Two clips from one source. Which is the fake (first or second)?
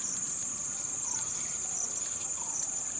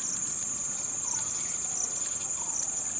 first